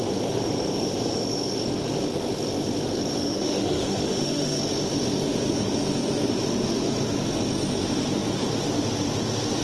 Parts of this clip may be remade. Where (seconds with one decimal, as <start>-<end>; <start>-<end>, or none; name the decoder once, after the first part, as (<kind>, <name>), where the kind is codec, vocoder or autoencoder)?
3.2-4.6 (autoencoder, DAC-VAE)